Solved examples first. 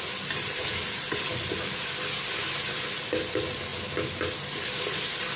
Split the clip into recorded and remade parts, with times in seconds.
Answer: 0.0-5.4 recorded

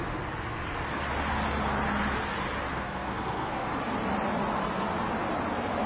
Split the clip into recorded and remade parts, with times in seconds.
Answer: 0.0-2.7 recorded; 2.7-3.7 remade; 3.7-5.9 recorded

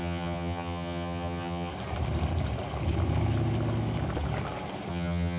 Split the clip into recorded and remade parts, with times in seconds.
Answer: 0.0-1.7 remade; 1.7-4.9 recorded; 4.9-5.4 remade

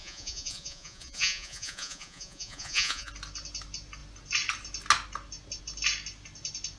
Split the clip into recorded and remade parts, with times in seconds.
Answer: 0.0-3.1 remade; 3.1-6.8 recorded

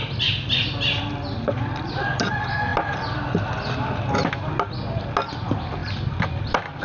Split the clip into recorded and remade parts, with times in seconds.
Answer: 0.0-6.8 recorded

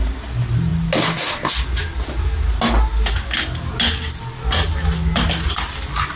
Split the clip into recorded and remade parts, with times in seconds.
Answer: 0.0-0.7 remade; 0.7-4.4 recorded; 4.4-6.2 remade

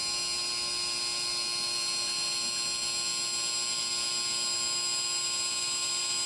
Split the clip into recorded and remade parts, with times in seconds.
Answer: 0.0-6.3 recorded

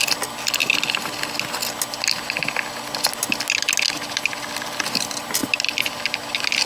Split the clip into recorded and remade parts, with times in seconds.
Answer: 0.0-6.7 recorded